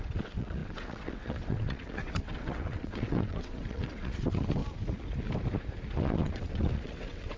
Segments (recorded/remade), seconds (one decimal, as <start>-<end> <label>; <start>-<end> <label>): 0.0-4.6 remade; 4.6-5.9 recorded; 5.9-7.4 remade